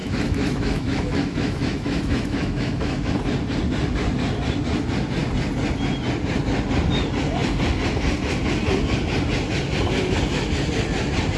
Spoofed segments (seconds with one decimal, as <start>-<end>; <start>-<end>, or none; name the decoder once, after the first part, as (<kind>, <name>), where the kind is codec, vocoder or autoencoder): 0.0-3.1 (autoencoder, DAC-VAE)